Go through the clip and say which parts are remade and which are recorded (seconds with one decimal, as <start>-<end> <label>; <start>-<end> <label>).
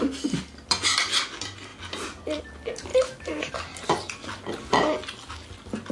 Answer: 0.0-2.9 recorded; 2.9-3.5 remade; 3.5-5.9 recorded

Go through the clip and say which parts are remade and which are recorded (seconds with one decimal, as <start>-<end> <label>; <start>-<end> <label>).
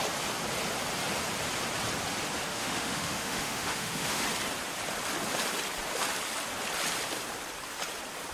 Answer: 0.0-2.5 recorded; 2.5-4.2 remade; 4.2-8.3 recorded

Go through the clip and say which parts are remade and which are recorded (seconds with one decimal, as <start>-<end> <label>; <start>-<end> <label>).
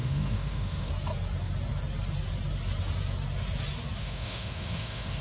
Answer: 0.0-0.9 remade; 0.9-4.0 recorded; 4.0-5.2 remade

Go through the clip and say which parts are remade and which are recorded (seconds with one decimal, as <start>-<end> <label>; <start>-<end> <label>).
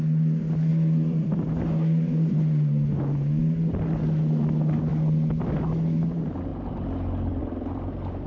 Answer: 0.0-8.3 recorded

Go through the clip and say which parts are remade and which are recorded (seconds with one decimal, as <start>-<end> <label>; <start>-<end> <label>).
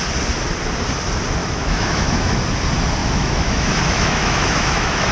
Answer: 0.0-1.4 recorded; 1.4-2.4 remade; 2.4-3.0 recorded; 3.0-5.1 remade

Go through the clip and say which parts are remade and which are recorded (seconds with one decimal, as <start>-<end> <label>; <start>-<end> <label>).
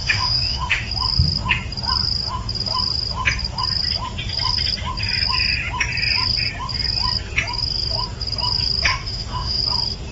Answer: 0.0-0.9 remade; 0.9-8.9 recorded; 8.9-9.6 remade; 9.6-10.1 recorded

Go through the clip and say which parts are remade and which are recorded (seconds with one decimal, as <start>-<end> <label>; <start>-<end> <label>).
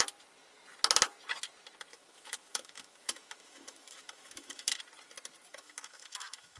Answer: 0.0-1.9 recorded; 1.9-4.8 remade; 4.8-5.5 recorded; 5.5-6.6 remade